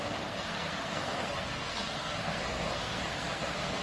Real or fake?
fake